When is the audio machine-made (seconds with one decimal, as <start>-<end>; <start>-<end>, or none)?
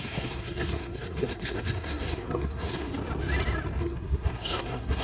0.0-2.9; 3.8-5.0